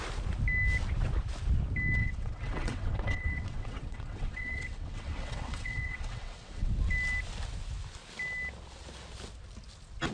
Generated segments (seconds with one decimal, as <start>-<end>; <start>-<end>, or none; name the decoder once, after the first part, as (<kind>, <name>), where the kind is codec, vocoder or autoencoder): 2.0-6.7 (vocoder, WaveNeXt)